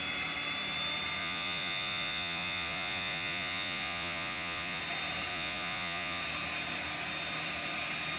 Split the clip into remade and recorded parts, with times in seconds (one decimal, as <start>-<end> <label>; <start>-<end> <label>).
0.0-1.2 recorded; 1.2-4.8 remade; 4.8-5.3 recorded; 5.3-6.2 remade; 6.2-8.2 recorded